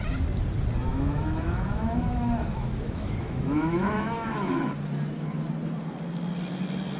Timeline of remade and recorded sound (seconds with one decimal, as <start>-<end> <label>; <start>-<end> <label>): 0.0-0.9 recorded; 0.9-4.7 remade; 4.7-7.0 recorded